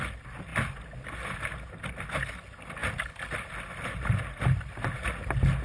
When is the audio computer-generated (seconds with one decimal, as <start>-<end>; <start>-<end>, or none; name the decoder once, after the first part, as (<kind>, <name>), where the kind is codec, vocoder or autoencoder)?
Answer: none